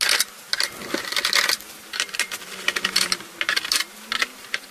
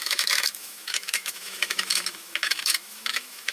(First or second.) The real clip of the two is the first